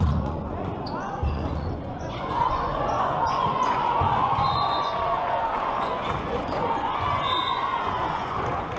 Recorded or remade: remade